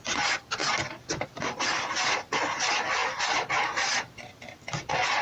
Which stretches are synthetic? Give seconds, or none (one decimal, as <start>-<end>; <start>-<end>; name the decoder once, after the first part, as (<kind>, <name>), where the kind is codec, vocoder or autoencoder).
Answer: none